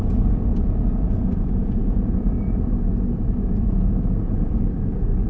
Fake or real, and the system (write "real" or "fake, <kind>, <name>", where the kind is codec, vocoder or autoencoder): fake, vocoder, Vocos